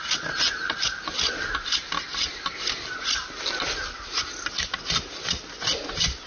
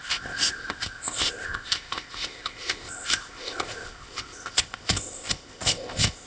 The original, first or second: first